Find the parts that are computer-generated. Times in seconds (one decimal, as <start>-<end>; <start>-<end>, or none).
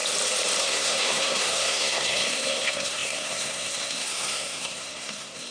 0.6-5.5